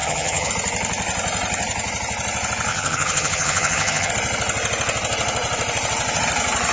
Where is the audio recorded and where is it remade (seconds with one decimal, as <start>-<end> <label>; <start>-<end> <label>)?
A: 0.0-0.5 remade; 0.5-2.7 recorded; 2.7-4.1 remade; 4.1-6.7 recorded